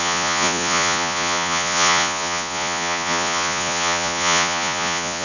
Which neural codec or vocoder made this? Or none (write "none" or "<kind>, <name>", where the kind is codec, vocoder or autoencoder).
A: vocoder, Vocos